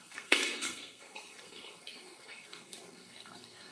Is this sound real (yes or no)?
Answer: no